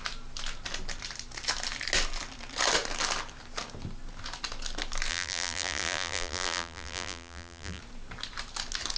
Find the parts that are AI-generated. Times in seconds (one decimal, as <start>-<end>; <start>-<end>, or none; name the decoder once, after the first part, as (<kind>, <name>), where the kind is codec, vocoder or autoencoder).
5.1-7.8 (vocoder, BigVGAN v2)

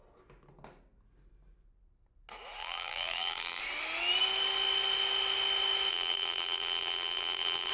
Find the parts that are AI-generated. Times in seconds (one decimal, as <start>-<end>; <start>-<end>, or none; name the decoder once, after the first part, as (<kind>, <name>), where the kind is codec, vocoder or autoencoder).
2.6-3.6 (vocoder, BigVGAN v2); 5.9-7.7

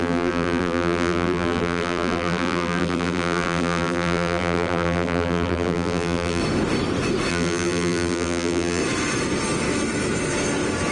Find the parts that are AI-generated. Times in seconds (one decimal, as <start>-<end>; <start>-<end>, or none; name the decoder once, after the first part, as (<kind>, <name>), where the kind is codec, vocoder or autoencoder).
0.0-6.4 (vocoder, BigVGAN v2); 7.3-8.8

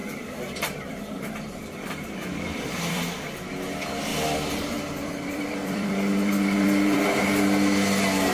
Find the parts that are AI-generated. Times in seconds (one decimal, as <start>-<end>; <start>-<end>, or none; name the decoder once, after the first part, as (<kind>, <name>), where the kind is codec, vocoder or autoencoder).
0.0-3.1 (vocoder, BigVGAN v2); 4.1-7.0

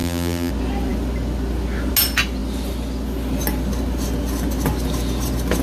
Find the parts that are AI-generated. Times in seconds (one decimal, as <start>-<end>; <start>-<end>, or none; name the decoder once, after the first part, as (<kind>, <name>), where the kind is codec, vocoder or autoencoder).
0.0-0.5 (vocoder, BigVGAN v2)

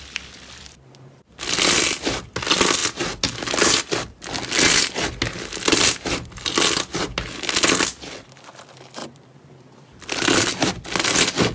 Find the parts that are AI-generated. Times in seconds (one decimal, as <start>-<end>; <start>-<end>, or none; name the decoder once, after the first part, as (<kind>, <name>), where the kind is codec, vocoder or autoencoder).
9.0-10.7 (vocoder, BigVGAN v2)

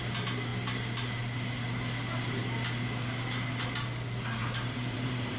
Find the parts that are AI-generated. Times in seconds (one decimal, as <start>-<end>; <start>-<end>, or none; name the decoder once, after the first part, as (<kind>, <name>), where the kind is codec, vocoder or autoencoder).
4.4-5.4 (vocoder, BigVGAN v2)

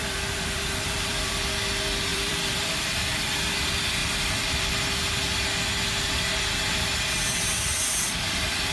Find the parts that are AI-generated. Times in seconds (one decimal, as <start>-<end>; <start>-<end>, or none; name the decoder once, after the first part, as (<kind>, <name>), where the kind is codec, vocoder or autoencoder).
0.0-1.3 (vocoder, BigVGAN v2); 2.1-3.5; 4.0-4.7